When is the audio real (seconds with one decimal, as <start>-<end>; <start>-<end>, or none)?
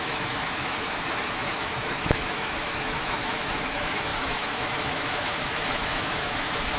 none